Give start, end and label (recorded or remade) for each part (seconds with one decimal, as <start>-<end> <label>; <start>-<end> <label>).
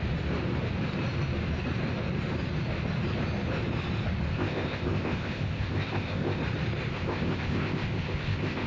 0.0-4.3 recorded; 4.3-6.4 remade; 6.4-6.9 recorded; 6.9-8.7 remade